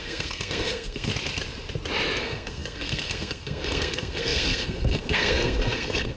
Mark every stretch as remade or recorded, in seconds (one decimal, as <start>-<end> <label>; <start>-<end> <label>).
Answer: 0.0-1.1 remade; 1.1-2.2 recorded; 2.2-6.2 remade

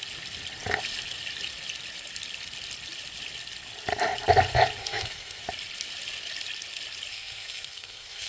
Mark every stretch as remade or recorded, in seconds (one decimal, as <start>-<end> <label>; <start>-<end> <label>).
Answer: 0.0-4.8 recorded; 4.8-5.4 remade; 5.4-7.1 recorded; 7.1-8.3 remade

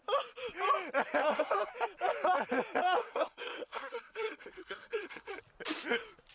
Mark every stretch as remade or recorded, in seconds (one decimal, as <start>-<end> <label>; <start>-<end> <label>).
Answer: 0.0-1.2 recorded; 1.2-1.7 remade; 1.7-3.0 recorded; 3.0-5.4 remade; 5.4-6.3 recorded